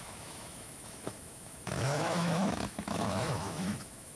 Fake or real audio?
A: fake